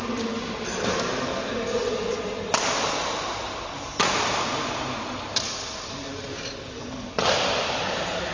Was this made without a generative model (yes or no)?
no